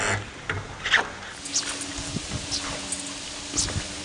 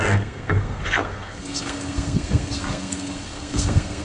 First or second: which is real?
first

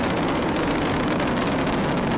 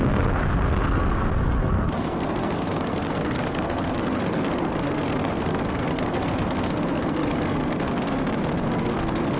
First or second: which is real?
first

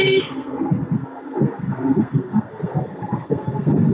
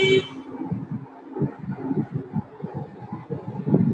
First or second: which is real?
second